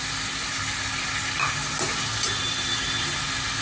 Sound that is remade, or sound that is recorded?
recorded